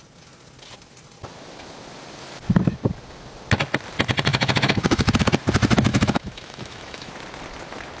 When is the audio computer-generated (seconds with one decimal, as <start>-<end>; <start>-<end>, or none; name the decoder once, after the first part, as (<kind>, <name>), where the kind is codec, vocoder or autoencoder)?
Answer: 4.3-5.3 (autoencoder, DAC-VAE); 5.9-7.1